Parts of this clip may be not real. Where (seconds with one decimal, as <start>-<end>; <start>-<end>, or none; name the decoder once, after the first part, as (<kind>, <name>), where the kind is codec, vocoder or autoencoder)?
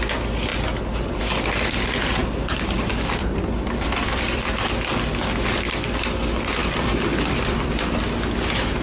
2.2-4.6 (vocoder, BigVGAN v2); 6.6-8.0